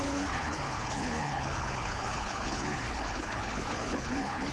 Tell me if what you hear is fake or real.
fake